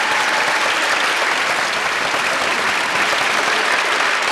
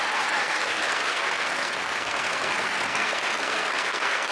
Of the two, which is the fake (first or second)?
second